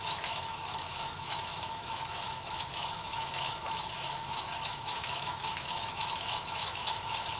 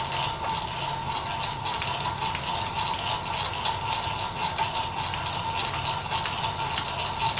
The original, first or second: second